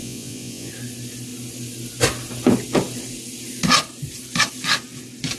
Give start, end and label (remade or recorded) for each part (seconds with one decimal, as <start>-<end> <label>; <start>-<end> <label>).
0.0-0.7 remade; 0.7-5.4 recorded